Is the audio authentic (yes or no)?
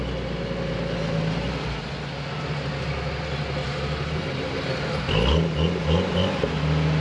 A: yes